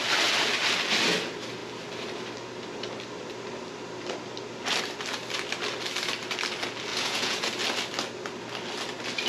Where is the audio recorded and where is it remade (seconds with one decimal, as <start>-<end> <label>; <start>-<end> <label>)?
0.0-6.9 recorded; 6.9-7.5 remade; 7.5-9.3 recorded